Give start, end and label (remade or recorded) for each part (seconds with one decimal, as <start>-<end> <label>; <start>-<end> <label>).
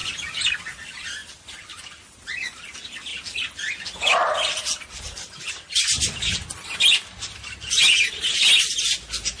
0.0-9.4 recorded